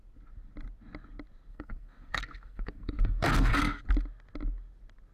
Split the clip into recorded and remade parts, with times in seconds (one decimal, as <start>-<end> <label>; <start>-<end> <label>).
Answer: 0.0-1.5 recorded; 1.5-3.8 remade; 3.8-5.1 recorded